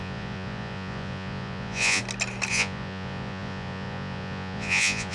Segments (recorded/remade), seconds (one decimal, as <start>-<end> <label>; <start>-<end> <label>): 0.0-2.0 remade; 2.0-2.5 recorded; 2.5-5.1 remade